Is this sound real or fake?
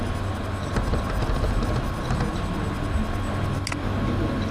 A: real